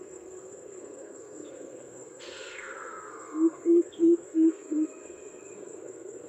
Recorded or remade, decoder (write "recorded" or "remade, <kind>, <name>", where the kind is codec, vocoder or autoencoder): remade, codec, SNAC